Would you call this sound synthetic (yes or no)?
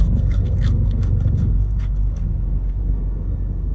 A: yes